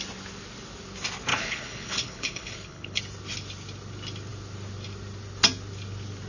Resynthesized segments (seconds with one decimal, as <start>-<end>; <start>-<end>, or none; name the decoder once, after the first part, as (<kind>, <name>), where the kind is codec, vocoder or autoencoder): 1.3-3.0 (codec, HILCodec)